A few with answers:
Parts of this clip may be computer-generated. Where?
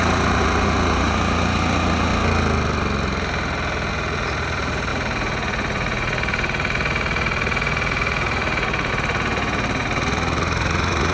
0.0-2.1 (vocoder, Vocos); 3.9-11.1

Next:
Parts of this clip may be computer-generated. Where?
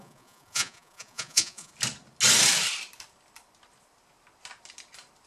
0.0-1.7 (vocoder, Vocos)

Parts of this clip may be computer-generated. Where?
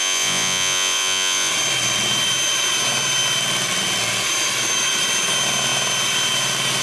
0.0-1.5 (vocoder, Vocos)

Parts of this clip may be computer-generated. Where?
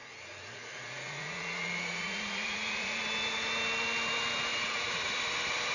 0.0-3.0 (vocoder, Vocos); 4.5-5.3